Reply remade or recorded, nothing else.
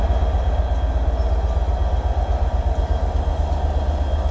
recorded